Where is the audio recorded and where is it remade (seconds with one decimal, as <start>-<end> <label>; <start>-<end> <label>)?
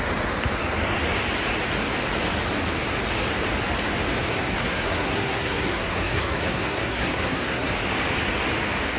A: 0.0-4.3 recorded; 4.3-7.7 remade; 7.7-9.0 recorded